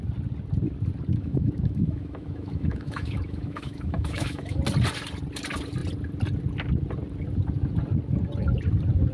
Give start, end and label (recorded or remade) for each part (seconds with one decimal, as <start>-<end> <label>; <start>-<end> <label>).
0.0-1.1 recorded; 1.1-4.6 remade; 4.6-9.1 recorded